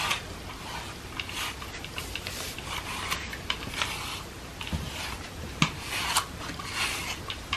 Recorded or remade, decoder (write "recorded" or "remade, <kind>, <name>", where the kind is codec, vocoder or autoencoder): recorded